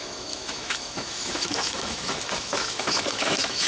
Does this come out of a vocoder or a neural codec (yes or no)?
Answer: yes